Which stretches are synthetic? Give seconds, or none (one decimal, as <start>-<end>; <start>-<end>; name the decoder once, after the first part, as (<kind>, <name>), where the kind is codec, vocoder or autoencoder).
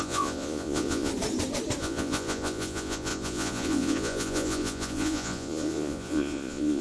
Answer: 0.0-1.1 (vocoder, Vocos); 1.8-6.8